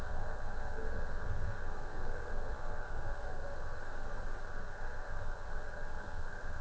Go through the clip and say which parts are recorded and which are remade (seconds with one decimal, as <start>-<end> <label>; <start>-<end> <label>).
0.0-3.8 remade; 3.8-4.4 recorded; 4.4-6.6 remade